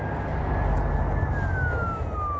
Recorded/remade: recorded